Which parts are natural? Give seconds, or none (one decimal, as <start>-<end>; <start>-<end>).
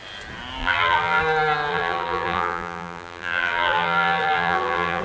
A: 0.0-0.6; 1.2-1.7